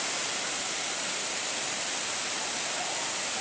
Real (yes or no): yes